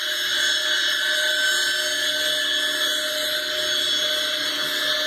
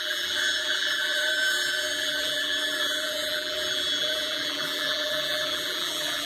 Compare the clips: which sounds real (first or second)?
first